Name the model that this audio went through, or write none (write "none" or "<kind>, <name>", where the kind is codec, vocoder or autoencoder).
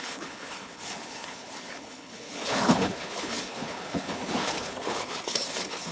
codec, HILCodec